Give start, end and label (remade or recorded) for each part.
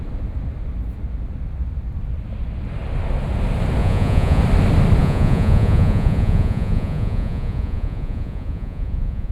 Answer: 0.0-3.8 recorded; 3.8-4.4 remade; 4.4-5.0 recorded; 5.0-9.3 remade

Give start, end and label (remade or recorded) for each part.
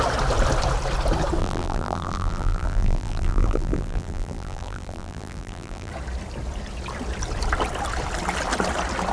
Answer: 0.0-1.4 recorded; 1.4-5.9 remade; 5.9-9.1 recorded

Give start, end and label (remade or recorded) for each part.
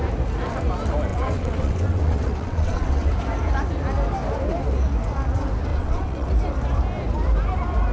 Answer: 0.0-1.1 recorded; 1.1-3.1 remade; 3.1-5.7 recorded; 5.7-6.3 remade; 6.3-7.9 recorded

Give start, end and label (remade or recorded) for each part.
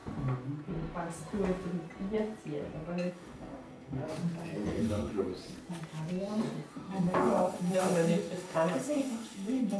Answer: 0.0-3.1 recorded; 3.1-4.0 remade; 4.0-4.7 recorded; 4.7-5.3 remade; 5.3-6.7 recorded; 6.7-9.8 remade